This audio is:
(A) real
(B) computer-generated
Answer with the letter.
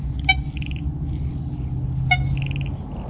A